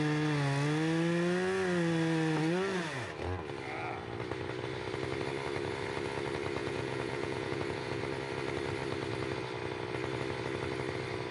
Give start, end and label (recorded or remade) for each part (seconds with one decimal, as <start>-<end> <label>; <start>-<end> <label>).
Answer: 0.0-6.6 recorded; 6.6-8.0 remade; 8.0-11.3 recorded